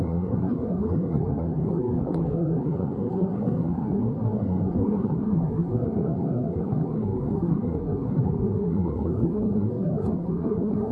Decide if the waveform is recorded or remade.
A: remade